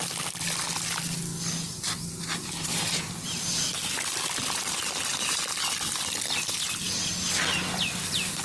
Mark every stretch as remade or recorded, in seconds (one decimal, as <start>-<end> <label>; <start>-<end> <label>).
0.0-5.1 recorded; 5.1-5.7 remade; 5.7-8.4 recorded